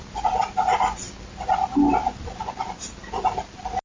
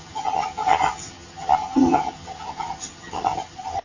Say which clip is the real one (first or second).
first